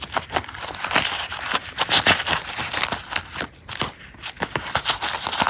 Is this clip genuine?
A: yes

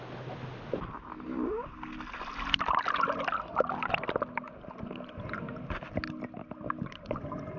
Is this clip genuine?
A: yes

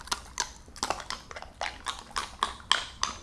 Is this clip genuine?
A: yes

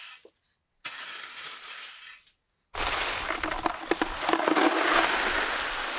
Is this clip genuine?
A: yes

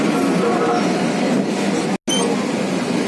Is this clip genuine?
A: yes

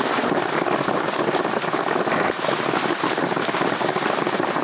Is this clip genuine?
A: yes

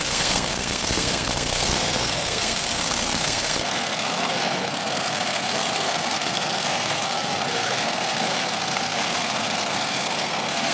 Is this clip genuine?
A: no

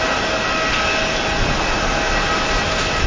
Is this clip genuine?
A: yes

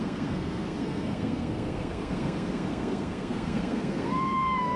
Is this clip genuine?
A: no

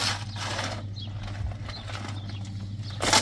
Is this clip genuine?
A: yes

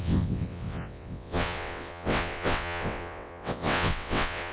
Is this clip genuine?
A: no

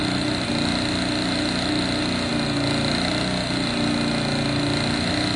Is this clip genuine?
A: yes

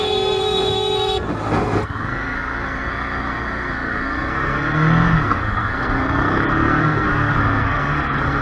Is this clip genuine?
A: no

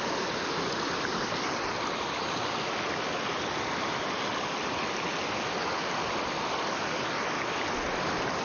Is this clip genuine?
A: yes